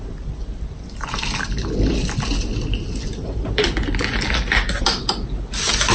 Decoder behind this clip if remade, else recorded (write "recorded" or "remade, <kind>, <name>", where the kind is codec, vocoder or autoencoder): recorded